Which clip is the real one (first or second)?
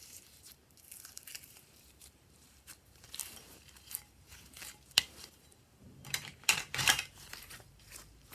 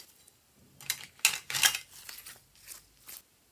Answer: second